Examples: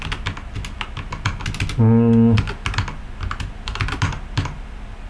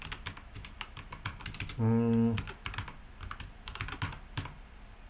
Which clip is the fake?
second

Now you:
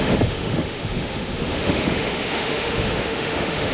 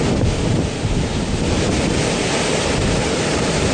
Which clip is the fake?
first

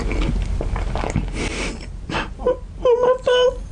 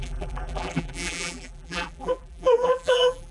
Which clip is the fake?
second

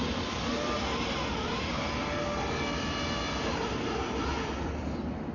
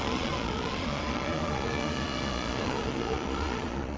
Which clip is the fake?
second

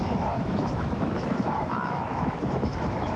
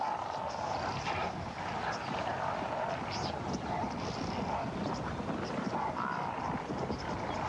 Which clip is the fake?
first